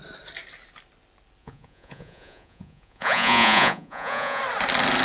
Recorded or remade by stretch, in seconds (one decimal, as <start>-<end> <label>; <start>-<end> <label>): 0.0-1.4 recorded; 1.4-4.4 remade; 4.4-5.0 recorded